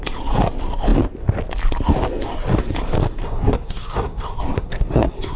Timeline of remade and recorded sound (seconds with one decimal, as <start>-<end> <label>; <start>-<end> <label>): 0.0-3.2 recorded; 3.2-5.4 remade